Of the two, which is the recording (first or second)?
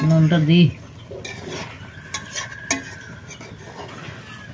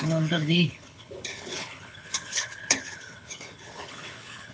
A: first